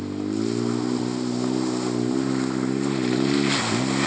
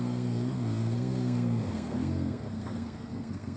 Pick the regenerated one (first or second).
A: second